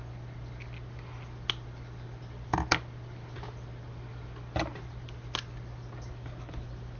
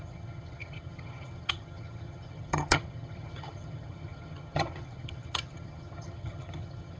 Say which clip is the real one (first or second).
first